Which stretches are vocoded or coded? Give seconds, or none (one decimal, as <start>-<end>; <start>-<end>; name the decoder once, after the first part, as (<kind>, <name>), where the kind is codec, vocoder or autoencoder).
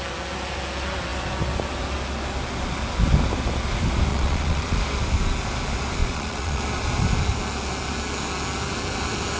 4.1-4.8 (vocoder, Vocos); 6.0-6.6